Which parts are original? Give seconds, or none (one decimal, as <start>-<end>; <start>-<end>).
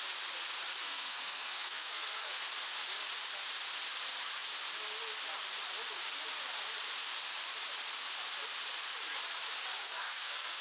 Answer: 0.0-0.8; 2.4-9.8